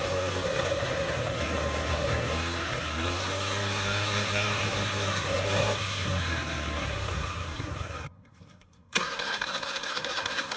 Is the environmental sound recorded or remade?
remade